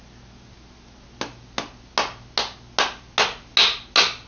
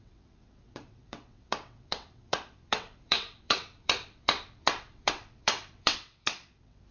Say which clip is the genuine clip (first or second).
first